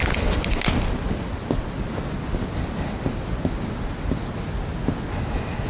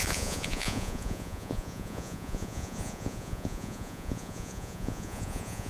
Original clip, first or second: first